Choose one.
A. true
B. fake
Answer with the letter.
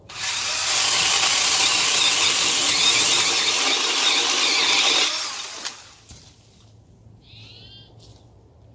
A